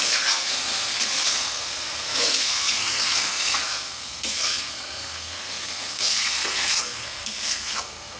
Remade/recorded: remade